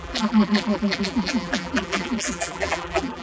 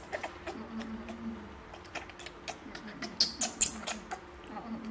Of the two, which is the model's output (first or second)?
first